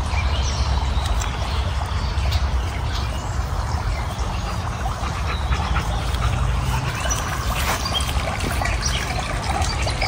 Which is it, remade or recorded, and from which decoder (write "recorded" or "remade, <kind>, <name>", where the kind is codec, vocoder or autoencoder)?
recorded